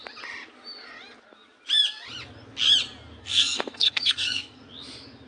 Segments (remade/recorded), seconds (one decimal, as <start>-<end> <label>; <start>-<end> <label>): 0.0-3.2 recorded; 3.2-4.6 remade; 4.6-5.3 recorded